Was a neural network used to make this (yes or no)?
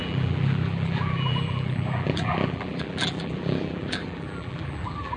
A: yes